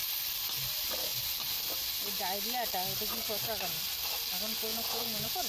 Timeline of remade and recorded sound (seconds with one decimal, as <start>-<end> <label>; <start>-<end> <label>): 0.0-4.7 recorded; 4.7-5.5 remade